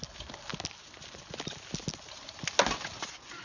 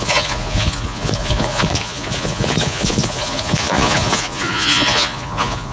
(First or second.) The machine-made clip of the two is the second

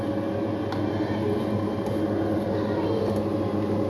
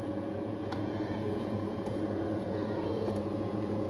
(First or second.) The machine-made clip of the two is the second